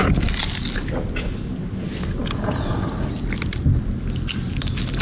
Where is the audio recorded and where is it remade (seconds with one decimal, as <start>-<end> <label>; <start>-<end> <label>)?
0.0-5.0 recorded